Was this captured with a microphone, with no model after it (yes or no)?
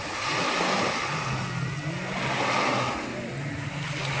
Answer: yes